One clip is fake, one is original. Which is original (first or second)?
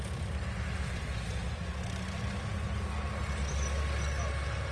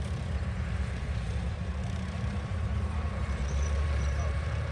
first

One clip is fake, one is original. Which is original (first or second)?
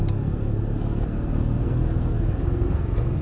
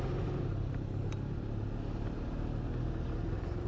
second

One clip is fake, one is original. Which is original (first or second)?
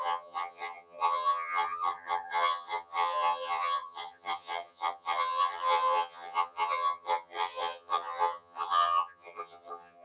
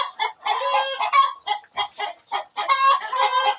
second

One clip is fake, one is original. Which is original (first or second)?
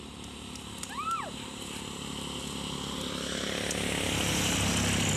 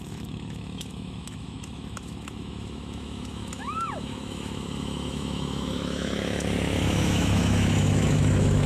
first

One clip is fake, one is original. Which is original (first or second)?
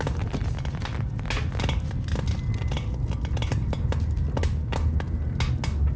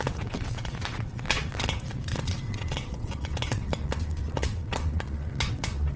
first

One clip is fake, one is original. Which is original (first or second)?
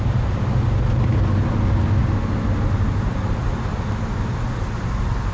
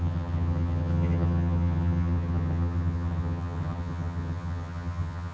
first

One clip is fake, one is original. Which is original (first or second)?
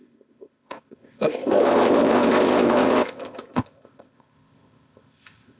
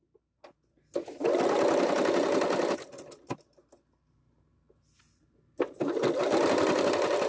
second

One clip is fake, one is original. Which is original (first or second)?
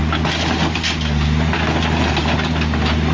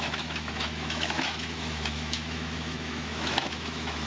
first